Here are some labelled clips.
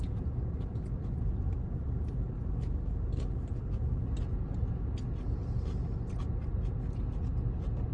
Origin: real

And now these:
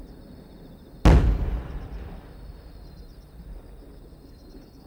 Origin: real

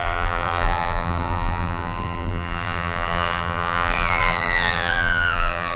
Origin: fake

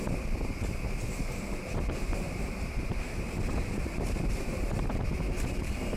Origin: fake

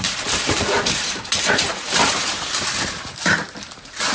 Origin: fake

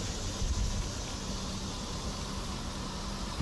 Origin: real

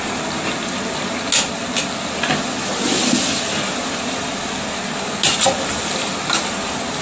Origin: real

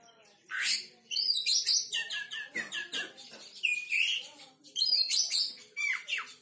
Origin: fake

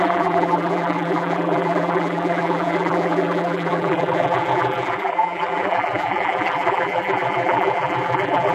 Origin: fake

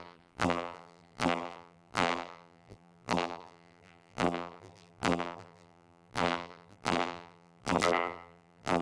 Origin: fake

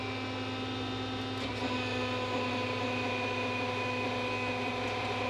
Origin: real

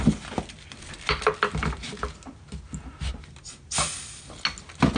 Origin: real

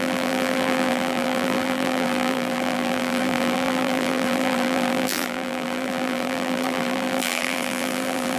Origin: fake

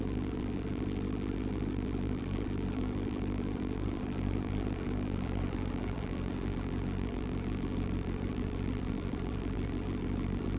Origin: fake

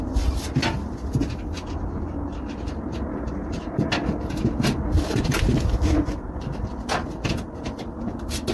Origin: real